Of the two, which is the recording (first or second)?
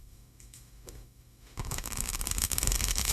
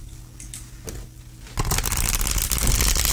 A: second